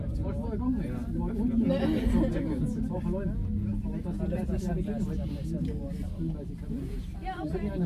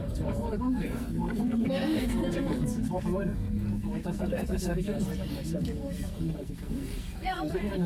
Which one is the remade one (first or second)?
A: second